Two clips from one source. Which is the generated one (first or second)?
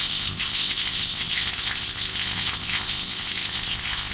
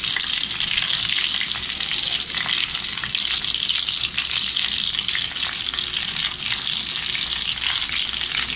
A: first